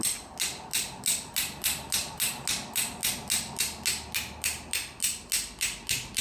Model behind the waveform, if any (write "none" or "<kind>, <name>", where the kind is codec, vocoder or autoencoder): none